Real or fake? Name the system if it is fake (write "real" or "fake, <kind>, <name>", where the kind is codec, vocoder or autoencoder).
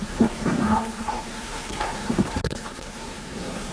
fake, codec, SNAC